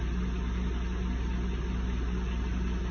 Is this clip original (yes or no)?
yes